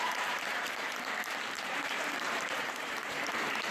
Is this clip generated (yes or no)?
yes